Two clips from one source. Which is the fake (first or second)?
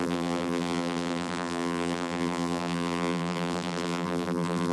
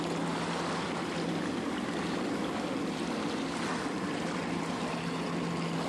first